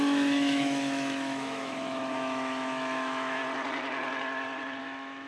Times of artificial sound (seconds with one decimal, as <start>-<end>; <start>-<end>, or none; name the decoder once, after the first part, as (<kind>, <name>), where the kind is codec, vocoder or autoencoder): 0.0-3.4 (autoencoder, DAC-VAE); 4.8-5.3